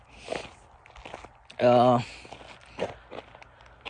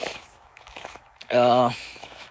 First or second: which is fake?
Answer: second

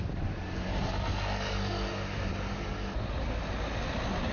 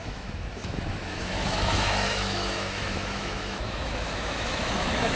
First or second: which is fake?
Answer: second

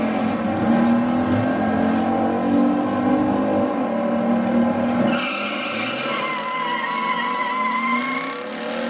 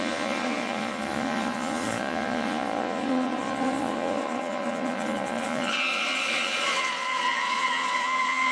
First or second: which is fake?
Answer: second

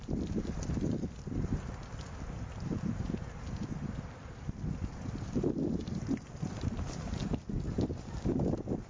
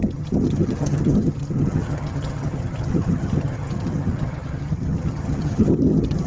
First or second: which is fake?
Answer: second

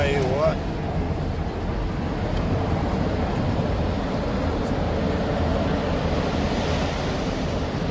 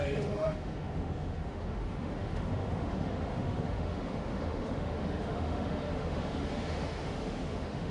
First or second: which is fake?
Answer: second